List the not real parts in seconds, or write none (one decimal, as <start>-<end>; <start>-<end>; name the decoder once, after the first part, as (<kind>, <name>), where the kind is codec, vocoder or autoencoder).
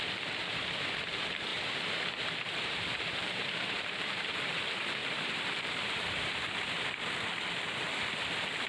1.5-4.5 (vocoder, BigVGAN v2); 5.0-6.9